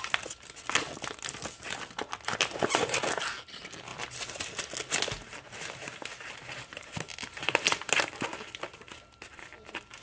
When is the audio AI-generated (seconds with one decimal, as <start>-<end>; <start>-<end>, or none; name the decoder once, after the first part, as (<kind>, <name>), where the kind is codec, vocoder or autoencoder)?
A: none